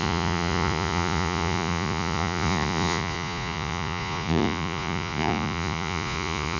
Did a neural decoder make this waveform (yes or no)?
yes